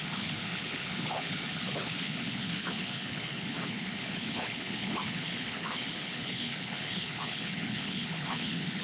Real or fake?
fake